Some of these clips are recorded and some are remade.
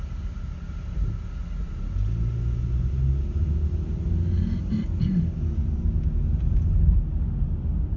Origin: recorded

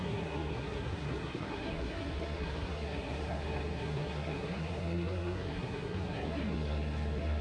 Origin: remade